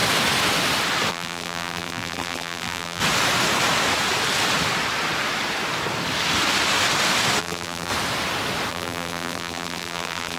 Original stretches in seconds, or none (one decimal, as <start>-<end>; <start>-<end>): 0.0-1.1; 3.0-7.4; 7.9-8.7